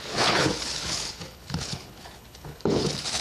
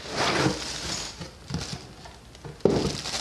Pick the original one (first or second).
second